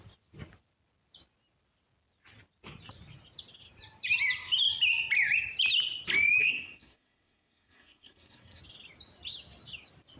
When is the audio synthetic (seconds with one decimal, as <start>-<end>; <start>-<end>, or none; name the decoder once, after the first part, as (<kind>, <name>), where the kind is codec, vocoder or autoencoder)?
6.4-8.6 (codec, SNAC)

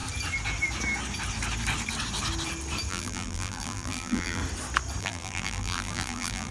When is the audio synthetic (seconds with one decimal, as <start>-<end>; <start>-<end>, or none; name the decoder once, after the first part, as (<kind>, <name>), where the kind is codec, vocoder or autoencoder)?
2.9-4.4 (vocoder, BigVGAN v2); 5.0-6.5